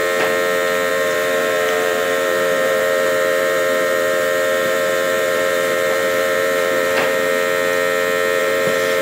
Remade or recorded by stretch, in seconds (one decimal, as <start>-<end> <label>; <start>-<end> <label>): 0.0-0.9 recorded; 0.9-7.3 remade; 7.3-8.4 recorded; 8.4-9.0 remade